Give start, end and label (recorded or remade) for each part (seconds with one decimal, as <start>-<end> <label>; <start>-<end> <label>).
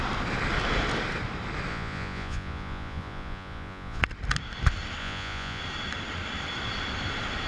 0.0-1.7 recorded; 1.7-4.0 remade; 4.0-5.0 recorded; 5.0-5.6 remade; 5.6-7.5 recorded